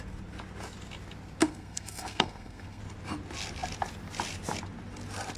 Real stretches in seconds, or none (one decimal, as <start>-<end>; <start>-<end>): 0.0-1.4; 2.8-5.4